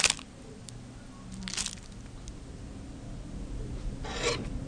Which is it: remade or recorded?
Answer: recorded